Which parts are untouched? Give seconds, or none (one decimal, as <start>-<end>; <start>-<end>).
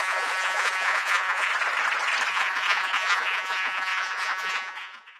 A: 1.5-2.3